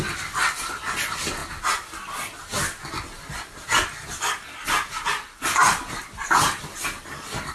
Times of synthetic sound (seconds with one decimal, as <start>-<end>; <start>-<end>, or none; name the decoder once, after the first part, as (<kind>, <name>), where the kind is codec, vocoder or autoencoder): none

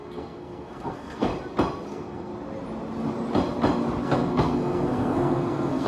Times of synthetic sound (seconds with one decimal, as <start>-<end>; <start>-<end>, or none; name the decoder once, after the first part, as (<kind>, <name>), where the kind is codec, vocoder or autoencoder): 0.0-1.3 (codec, SNAC); 1.9-2.3; 4.0-5.9

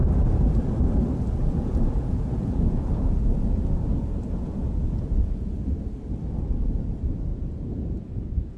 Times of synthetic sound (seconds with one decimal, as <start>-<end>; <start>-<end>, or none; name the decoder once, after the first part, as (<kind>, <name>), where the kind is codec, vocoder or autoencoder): 1.4-5.5 (vocoder, Vocos); 7.3-8.6

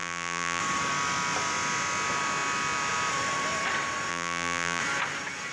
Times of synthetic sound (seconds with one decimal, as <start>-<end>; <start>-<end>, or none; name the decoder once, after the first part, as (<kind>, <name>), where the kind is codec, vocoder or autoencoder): 0.0-0.6 (vocoder, BigVGAN v2); 4.1-4.8

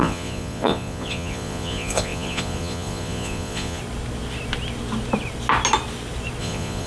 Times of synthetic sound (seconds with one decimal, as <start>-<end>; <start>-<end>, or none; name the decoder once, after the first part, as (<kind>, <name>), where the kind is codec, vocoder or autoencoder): 0.0-3.8 (vocoder, Vocos); 6.4-6.9

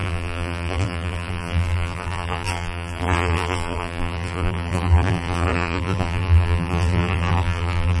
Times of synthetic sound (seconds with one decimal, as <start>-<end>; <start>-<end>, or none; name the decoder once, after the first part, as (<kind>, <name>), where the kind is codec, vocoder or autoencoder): 0.0-8.0 (vocoder, BigVGAN v2)